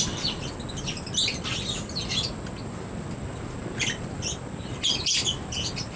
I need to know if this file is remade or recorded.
recorded